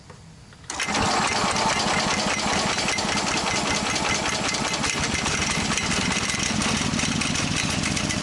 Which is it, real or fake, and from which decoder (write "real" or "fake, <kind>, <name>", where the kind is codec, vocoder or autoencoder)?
real